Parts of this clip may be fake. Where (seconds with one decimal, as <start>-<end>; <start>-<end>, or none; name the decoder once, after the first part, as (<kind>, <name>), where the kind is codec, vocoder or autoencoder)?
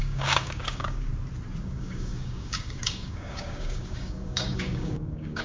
0.0-1.1 (codec, DAC); 1.6-5.4